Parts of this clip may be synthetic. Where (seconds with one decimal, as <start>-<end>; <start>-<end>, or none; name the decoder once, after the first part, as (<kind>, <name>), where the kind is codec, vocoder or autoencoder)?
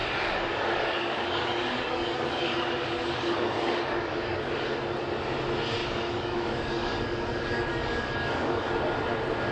0.0-4.5 (codec, DAC); 5.8-8.7